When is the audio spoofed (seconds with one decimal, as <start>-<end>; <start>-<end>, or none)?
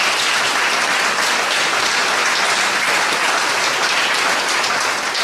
2.0-5.2